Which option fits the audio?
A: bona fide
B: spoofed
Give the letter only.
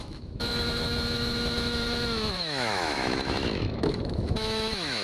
B